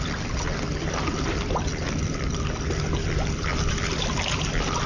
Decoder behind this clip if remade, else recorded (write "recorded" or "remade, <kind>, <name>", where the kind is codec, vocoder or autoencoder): recorded